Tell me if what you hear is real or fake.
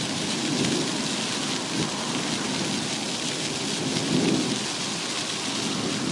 real